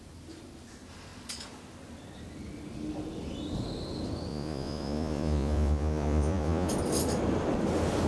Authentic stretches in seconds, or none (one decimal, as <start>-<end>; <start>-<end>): 0.0-4.3; 6.7-8.1